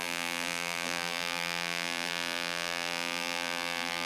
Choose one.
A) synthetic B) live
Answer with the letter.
A